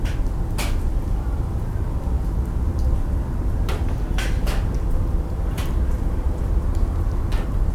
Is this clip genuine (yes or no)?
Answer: no